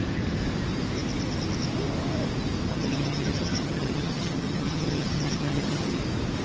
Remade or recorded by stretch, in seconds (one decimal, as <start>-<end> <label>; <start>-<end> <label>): 0.0-2.7 recorded; 2.7-6.0 remade; 6.0-6.4 recorded